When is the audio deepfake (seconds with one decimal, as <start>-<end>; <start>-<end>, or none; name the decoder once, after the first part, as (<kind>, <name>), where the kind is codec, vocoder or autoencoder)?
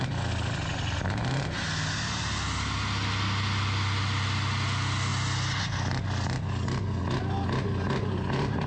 none